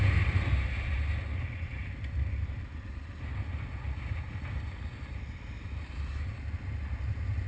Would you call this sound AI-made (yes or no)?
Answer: no